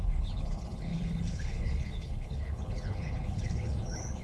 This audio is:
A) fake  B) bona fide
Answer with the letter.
A